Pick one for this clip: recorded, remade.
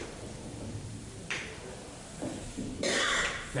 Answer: remade